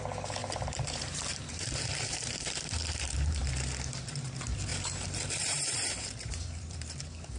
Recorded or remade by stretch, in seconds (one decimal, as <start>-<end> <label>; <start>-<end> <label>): 0.0-0.4 recorded; 0.4-3.5 remade; 3.5-4.7 recorded; 4.7-7.0 remade; 7.0-7.4 recorded

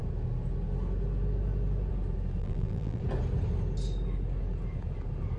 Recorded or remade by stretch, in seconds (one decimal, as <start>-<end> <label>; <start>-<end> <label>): 0.0-2.4 recorded; 2.4-3.0 remade; 3.0-5.4 recorded

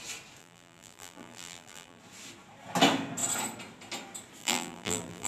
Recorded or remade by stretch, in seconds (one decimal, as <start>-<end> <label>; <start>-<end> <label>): 0.0-0.4 recorded; 0.4-2.0 remade; 2.0-4.4 recorded; 4.4-5.3 remade

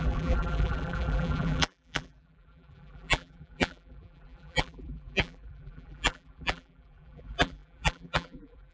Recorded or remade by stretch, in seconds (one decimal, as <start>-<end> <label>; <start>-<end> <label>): 0.0-8.7 remade

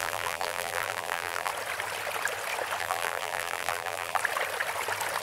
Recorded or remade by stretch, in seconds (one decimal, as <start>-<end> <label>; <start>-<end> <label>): 0.0-1.5 remade; 1.5-2.8 recorded; 2.8-4.2 remade; 4.2-5.2 recorded

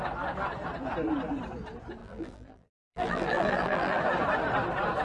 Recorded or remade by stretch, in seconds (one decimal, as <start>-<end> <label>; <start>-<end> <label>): 0.0-2.0 recorded; 2.0-4.0 remade; 4.0-5.0 recorded

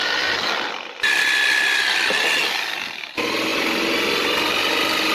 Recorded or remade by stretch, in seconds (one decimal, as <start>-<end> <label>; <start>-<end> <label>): 0.0-5.1 recorded